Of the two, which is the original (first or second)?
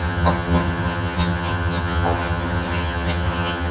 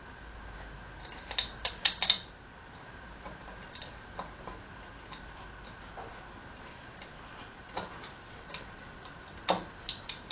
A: second